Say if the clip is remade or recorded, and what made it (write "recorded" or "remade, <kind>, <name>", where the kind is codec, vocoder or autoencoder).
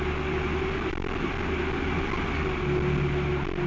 recorded